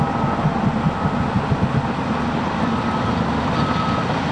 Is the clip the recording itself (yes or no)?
yes